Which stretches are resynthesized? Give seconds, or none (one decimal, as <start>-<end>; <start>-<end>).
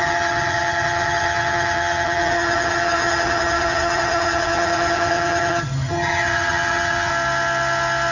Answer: 0.0-7.1